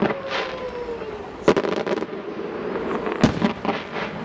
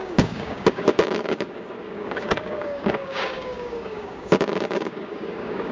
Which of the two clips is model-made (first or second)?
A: second